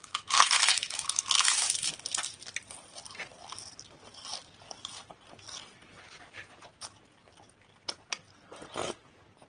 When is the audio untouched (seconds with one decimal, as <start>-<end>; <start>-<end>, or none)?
1.9-9.5